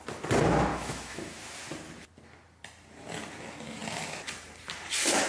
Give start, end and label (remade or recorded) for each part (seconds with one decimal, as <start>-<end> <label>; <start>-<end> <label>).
0.0-0.7 recorded; 0.7-1.4 remade; 1.4-5.3 recorded